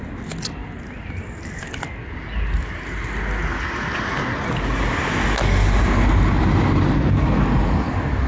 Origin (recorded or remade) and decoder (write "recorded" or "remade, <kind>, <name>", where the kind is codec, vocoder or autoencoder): recorded